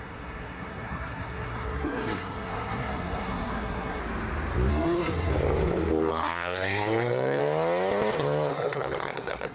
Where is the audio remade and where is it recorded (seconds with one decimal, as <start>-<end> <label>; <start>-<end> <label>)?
0.0-4.0 remade; 4.0-4.7 recorded; 4.7-5.3 remade; 5.3-6.1 recorded; 6.1-7.4 remade; 7.4-8.5 recorded; 8.5-9.5 remade